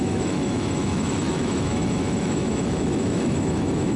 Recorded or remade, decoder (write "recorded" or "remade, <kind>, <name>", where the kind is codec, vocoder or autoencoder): remade, autoencoder, DAC-VAE